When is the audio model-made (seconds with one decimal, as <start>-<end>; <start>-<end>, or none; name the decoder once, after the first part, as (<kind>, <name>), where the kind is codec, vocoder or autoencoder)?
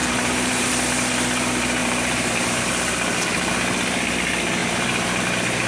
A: 0.0-0.7 (vocoder, BigVGAN v2); 1.8-2.7; 4.6-5.2